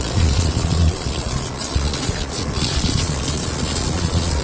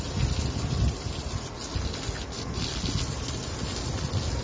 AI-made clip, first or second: first